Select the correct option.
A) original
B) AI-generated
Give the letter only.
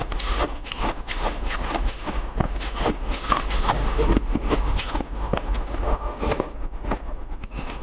B